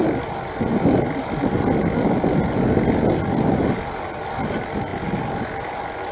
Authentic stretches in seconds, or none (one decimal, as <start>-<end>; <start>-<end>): 0.0-6.1